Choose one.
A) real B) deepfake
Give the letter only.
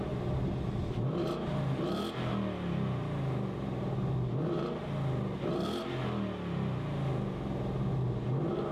A